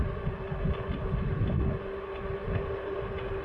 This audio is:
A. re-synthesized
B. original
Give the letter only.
B